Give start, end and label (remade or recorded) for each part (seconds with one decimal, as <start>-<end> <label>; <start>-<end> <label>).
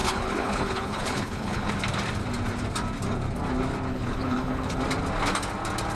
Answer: 0.0-1.7 remade; 1.7-3.9 recorded; 3.9-4.8 remade; 4.8-5.9 recorded